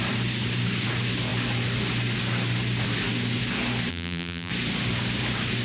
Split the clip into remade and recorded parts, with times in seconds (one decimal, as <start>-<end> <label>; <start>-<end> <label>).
0.0-3.9 recorded; 3.9-4.5 remade; 4.5-5.6 recorded